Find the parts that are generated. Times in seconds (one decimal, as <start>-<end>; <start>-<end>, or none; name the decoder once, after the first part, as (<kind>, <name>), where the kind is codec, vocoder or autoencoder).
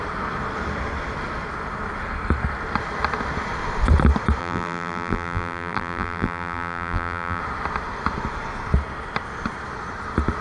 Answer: 4.4-7.4 (vocoder, BigVGAN v2)